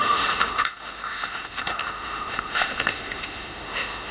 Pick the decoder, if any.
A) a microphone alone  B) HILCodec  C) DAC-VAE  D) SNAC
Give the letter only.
C